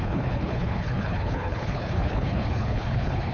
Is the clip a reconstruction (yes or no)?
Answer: yes